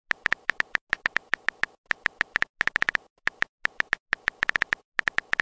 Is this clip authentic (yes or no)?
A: yes